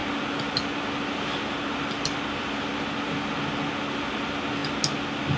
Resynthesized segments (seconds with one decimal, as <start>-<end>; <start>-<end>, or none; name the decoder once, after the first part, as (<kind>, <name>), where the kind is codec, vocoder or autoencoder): none